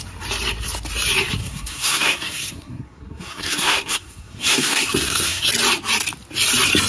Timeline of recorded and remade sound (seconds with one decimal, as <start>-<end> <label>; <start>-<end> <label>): 0.0-1.4 recorded; 1.4-5.5 remade; 5.5-6.9 recorded